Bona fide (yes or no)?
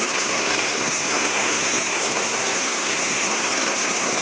no